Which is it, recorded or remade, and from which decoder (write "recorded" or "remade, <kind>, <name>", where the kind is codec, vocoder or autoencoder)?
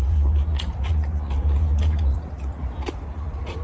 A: remade, vocoder, Vocos